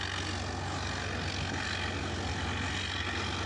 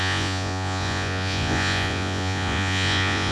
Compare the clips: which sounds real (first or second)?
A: first